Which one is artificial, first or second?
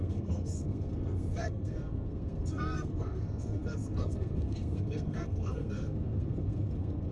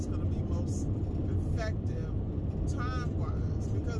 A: first